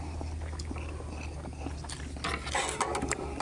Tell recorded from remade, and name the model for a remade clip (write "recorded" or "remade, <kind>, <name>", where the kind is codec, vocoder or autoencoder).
recorded